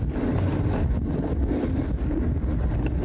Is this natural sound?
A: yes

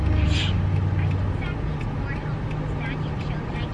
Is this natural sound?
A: yes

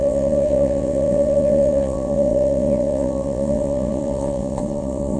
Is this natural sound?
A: no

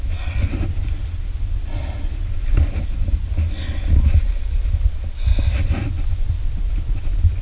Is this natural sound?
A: yes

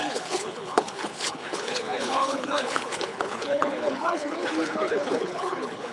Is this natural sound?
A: no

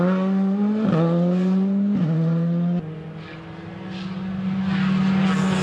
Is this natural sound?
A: yes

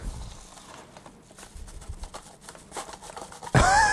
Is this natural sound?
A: yes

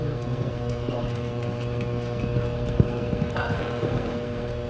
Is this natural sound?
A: no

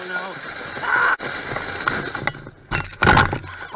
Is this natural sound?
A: yes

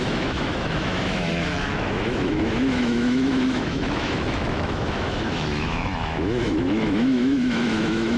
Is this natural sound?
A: no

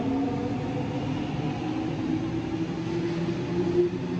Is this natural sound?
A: yes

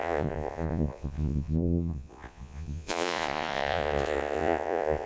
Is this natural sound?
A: no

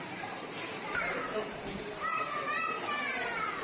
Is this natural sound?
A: no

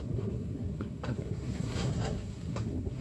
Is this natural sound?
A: no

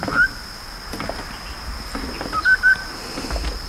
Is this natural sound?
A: yes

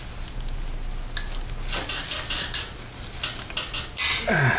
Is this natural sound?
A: yes